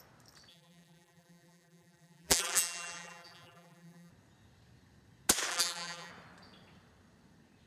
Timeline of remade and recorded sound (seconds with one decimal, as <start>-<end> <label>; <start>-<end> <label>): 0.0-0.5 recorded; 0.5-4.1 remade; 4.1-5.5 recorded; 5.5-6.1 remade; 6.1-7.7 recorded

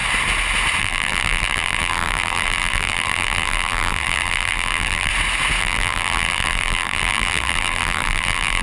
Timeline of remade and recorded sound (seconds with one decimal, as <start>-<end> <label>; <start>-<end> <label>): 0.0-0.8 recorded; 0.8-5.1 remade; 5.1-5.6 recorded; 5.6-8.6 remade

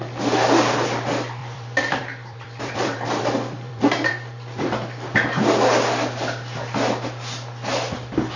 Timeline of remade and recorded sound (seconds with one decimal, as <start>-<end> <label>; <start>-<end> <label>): 0.0-1.4 recorded; 1.4-4.1 remade; 4.1-8.4 recorded